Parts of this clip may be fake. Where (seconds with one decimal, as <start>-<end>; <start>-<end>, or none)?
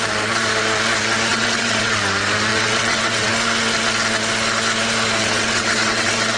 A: 1.3-2.0; 2.5-3.3; 5.2-6.4